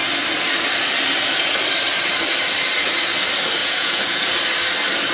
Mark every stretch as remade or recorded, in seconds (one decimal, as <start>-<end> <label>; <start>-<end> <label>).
0.0-3.6 recorded; 3.6-4.3 remade; 4.3-5.1 recorded